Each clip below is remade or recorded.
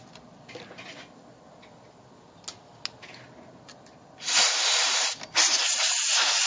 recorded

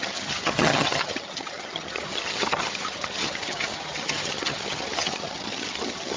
remade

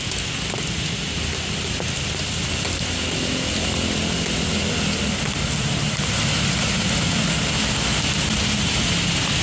recorded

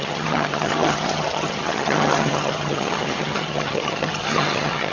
remade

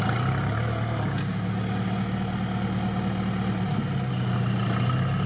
recorded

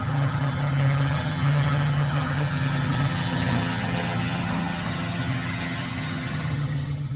remade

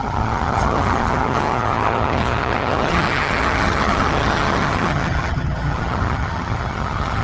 remade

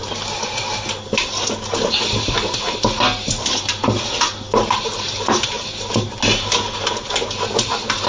recorded